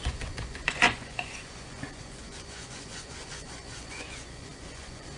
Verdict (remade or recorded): remade